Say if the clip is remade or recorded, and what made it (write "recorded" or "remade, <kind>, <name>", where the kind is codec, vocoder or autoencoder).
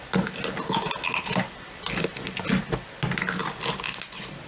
recorded